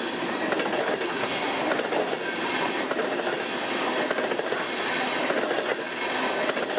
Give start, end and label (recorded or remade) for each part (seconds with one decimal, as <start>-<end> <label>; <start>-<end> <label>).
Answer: 0.0-1.1 recorded; 1.1-1.6 remade; 1.6-6.8 recorded